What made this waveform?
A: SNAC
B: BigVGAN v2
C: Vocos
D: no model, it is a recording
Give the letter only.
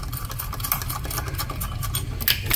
D